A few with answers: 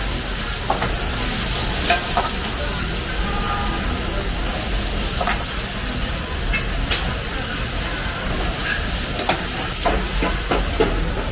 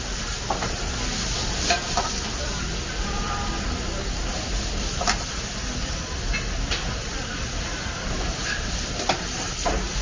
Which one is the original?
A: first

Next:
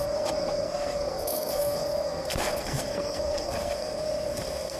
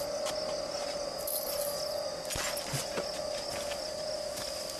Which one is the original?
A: second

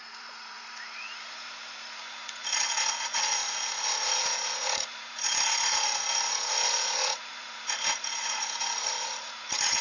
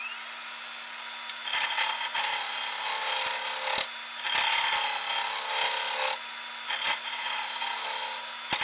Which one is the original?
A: second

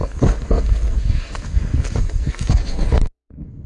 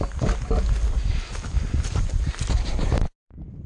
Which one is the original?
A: second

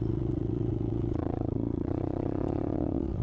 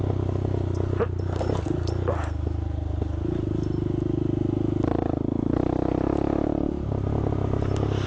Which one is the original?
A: second